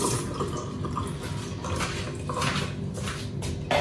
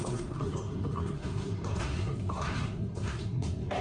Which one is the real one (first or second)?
first